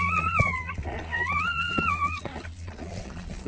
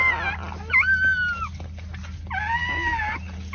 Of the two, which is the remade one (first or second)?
first